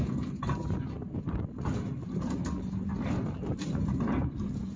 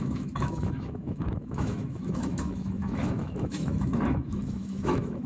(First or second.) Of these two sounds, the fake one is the second